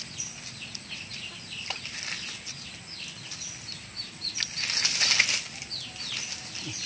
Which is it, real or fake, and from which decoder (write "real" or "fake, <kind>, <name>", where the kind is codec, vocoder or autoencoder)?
real